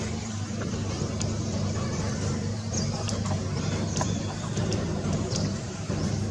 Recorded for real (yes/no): no